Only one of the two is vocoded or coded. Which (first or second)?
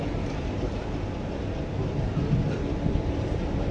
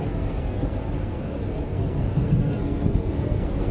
second